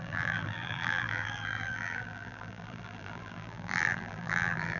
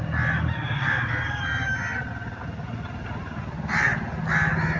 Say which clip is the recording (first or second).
second